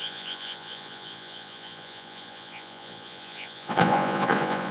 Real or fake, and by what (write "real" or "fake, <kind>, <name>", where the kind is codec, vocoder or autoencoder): fake, vocoder, Vocos